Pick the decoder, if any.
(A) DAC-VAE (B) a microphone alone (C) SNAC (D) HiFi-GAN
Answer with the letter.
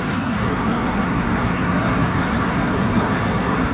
C